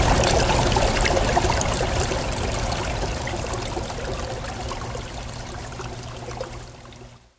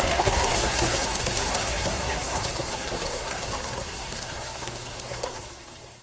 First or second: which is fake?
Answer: second